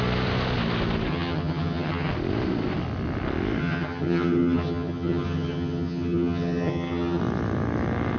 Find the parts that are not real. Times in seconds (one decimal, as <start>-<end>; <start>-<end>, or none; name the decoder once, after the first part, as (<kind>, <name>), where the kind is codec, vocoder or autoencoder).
1.1-2.1 (vocoder, HiFi-GAN); 3.6-7.2